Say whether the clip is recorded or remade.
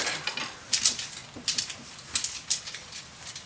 recorded